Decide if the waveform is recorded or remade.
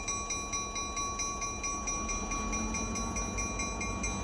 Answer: recorded